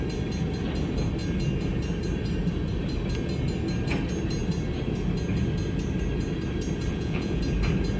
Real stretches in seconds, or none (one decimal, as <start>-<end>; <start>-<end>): 0.0-6.9; 7.4-8.0